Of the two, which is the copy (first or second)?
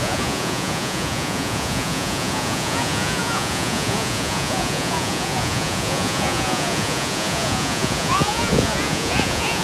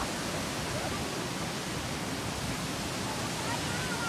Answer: first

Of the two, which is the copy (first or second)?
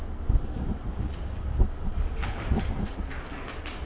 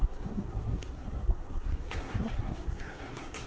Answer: second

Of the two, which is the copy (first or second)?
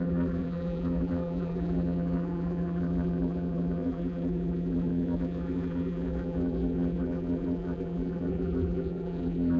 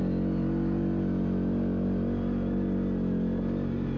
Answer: first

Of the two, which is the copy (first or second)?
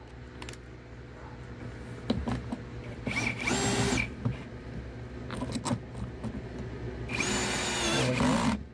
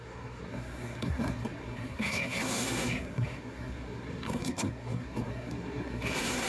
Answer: second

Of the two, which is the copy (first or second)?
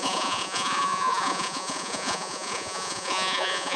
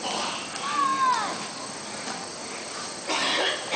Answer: first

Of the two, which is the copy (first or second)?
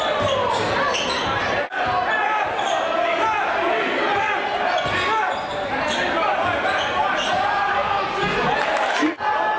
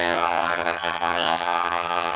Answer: second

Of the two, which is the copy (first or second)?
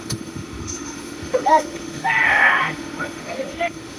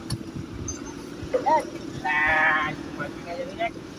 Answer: first